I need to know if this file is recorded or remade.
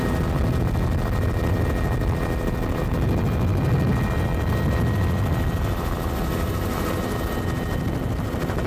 recorded